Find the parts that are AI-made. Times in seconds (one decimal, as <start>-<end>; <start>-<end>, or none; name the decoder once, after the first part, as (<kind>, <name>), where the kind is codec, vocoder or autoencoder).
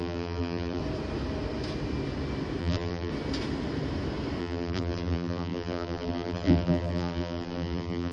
0.0-0.8 (vocoder, BigVGAN v2); 2.6-3.1; 4.4-8.1